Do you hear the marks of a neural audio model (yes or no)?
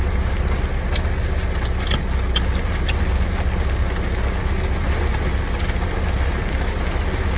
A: no